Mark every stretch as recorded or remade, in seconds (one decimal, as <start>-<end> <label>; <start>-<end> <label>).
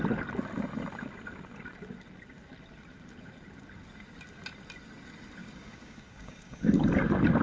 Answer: 0.0-5.4 recorded; 5.4-6.6 remade; 6.6-7.4 recorded